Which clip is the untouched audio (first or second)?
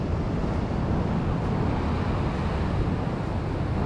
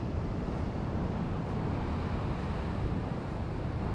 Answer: first